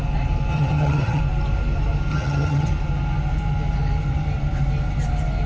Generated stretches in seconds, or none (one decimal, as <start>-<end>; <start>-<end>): 0.5-1.2; 2.1-2.7